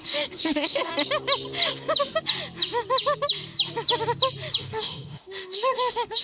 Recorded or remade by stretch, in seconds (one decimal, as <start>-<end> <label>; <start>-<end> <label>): 0.0-0.9 remade; 0.9-4.6 recorded; 4.6-6.2 remade